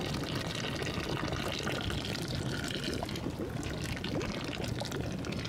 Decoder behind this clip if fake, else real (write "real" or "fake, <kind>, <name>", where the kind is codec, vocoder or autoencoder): real